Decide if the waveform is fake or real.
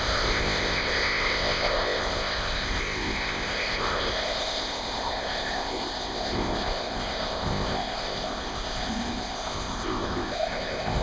fake